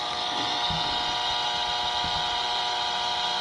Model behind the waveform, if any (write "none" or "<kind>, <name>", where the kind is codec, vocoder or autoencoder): none